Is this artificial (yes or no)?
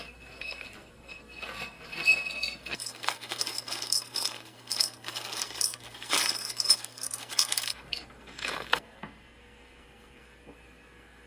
yes